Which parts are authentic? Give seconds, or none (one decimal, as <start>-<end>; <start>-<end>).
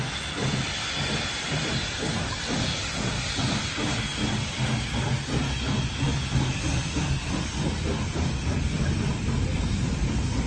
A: 0.0-4.1; 4.8-10.5